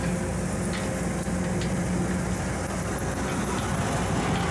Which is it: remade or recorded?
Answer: recorded